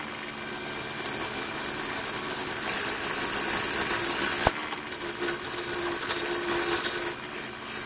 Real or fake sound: real